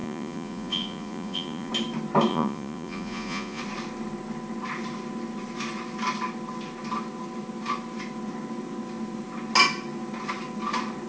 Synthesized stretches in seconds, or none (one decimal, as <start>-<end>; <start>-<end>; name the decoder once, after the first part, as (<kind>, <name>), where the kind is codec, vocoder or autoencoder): 0.0-1.7 (vocoder, Vocos); 2.3-3.6